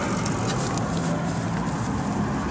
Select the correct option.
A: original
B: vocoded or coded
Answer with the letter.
A